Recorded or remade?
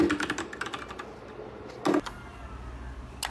recorded